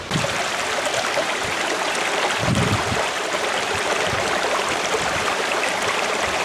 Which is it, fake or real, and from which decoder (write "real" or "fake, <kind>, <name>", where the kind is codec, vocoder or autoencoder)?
fake, vocoder, BigVGAN v2